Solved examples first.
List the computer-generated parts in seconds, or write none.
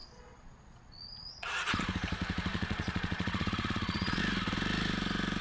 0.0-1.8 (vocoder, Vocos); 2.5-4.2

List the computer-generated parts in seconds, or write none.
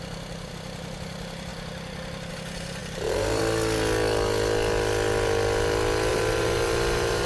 2.8-3.4 (vocoder, BigVGAN v2); 6.1-7.3